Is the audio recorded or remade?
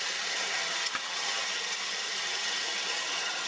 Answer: remade